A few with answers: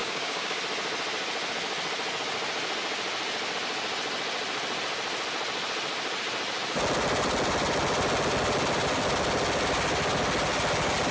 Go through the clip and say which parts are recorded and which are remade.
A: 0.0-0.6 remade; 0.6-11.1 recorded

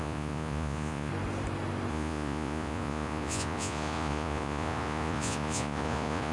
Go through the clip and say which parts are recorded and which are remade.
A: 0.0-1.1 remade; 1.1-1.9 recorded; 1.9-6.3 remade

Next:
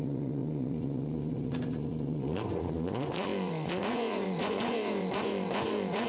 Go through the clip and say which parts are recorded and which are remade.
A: 0.0-6.1 remade

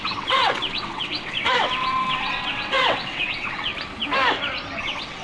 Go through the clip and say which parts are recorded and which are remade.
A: 0.0-3.7 remade; 3.7-4.8 recorded; 4.8-5.2 remade